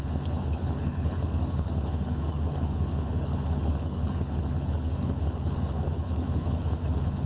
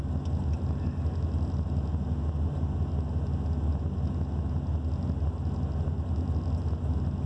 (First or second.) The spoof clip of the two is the first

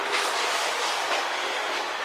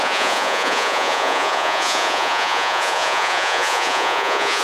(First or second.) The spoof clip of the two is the second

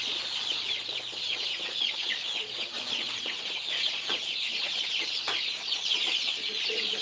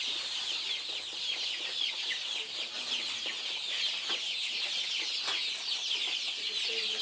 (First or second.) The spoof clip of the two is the first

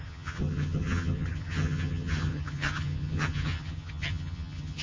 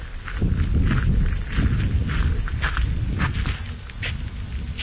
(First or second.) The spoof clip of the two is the first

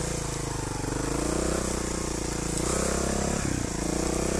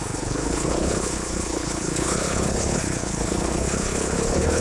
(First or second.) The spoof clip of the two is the second